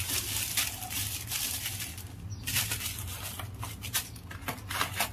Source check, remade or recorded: recorded